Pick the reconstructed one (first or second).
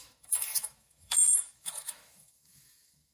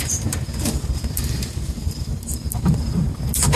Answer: first